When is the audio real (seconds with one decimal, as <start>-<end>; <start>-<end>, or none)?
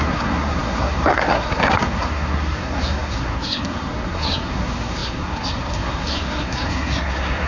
none